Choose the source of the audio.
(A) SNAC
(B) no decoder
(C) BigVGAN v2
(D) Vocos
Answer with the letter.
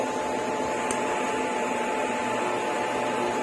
B